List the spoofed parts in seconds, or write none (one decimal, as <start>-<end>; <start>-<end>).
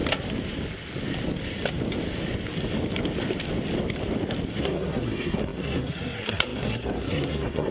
4.6-7.7